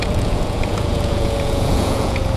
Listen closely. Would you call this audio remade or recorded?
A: remade